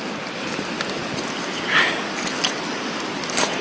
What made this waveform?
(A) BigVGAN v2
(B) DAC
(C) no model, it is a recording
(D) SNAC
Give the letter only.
C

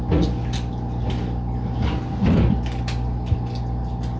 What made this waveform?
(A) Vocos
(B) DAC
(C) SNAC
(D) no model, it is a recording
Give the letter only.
D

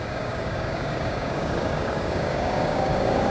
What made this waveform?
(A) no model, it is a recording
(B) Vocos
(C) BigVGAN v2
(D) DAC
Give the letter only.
D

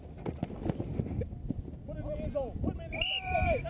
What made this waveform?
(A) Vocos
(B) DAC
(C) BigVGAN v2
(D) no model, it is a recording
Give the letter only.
D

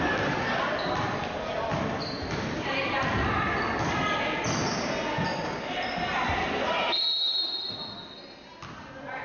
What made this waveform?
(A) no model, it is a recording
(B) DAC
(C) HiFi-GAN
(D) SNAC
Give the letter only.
A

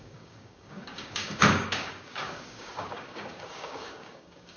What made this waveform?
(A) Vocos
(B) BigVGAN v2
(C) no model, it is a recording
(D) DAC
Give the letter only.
D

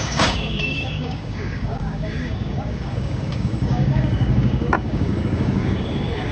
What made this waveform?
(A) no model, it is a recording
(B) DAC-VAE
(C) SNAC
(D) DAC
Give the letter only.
D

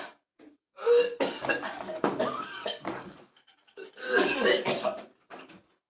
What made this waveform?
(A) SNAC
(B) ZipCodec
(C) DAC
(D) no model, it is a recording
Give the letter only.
C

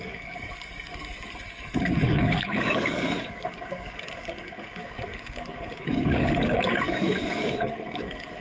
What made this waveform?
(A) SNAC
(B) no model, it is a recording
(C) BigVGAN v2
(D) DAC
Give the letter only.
D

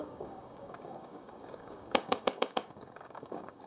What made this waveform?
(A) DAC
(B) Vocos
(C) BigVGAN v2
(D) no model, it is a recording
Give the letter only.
A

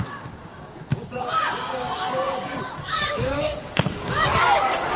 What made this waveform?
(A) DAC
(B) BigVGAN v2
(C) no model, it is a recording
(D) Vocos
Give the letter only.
A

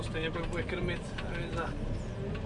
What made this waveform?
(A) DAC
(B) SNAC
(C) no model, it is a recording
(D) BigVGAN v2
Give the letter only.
C